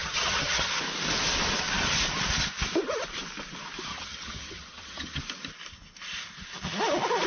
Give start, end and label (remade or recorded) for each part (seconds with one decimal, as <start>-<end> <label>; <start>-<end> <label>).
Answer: 0.0-0.7 remade; 0.7-3.9 recorded; 3.9-5.2 remade; 5.2-7.3 recorded